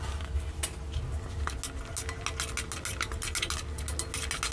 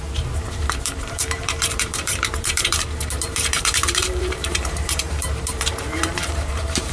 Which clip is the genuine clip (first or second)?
first